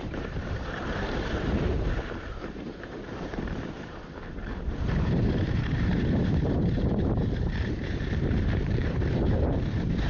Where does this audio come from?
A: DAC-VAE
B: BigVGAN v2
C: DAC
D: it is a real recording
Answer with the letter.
B